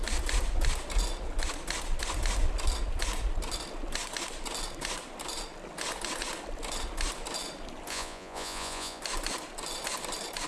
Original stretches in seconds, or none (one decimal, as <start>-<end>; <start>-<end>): 0.0-7.9; 9.0-10.5

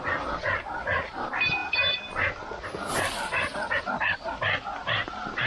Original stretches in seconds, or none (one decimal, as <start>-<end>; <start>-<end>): 0.0-5.5

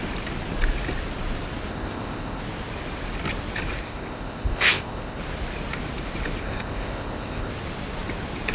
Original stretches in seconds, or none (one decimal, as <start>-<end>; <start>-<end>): 0.0-1.7; 2.4-3.8; 5.2-6.4; 7.5-8.5

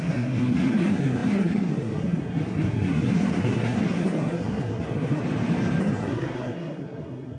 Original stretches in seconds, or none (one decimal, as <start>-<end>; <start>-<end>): 5.2-5.8

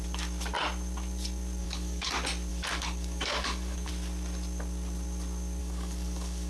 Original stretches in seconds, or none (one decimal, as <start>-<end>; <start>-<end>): 0.0-1.6; 2.1-2.5; 3.9-5.6